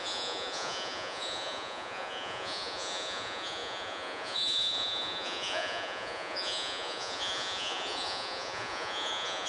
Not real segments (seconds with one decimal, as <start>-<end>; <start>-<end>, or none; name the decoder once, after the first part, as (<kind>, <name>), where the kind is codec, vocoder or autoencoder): 0.0-9.5 (vocoder, Vocos)